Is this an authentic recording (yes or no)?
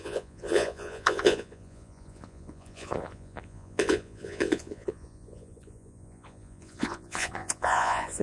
no